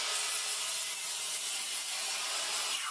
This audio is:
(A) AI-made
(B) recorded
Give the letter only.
B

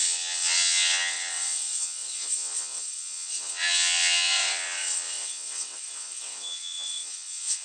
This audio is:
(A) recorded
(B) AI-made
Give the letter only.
B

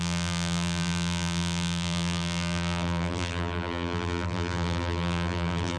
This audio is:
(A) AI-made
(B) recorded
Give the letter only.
A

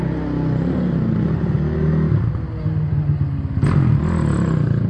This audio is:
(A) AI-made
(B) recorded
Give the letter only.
B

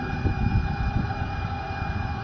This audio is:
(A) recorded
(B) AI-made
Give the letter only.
A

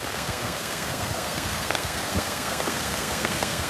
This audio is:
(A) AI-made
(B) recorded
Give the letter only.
A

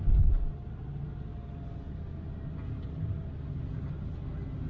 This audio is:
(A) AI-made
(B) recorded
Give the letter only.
B